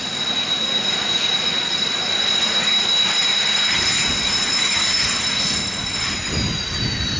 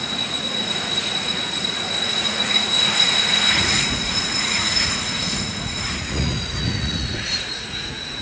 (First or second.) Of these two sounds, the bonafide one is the first